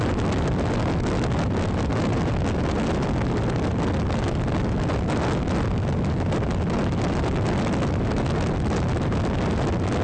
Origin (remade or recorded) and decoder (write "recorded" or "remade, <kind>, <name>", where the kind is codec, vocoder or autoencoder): recorded